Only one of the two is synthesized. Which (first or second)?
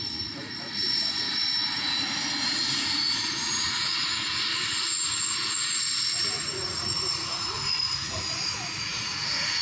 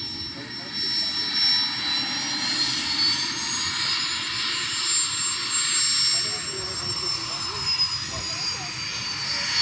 first